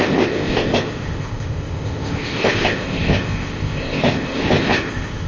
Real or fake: fake